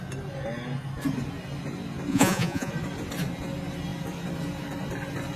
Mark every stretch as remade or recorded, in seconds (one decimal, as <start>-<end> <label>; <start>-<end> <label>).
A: 0.0-2.1 recorded; 2.1-2.7 remade; 2.7-5.4 recorded